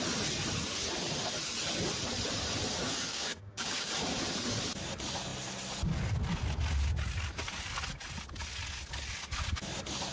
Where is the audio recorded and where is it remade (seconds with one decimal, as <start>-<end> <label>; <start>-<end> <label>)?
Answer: 0.0-3.1 recorded; 3.1-3.9 remade; 3.9-10.1 recorded